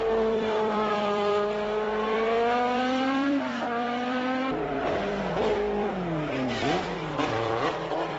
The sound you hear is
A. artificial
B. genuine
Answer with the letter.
A